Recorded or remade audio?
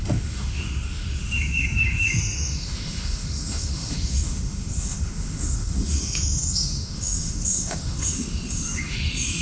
remade